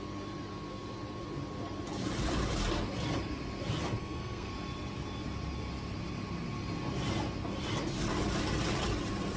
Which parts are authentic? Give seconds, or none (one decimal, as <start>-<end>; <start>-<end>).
0.0-4.0; 4.5-9.4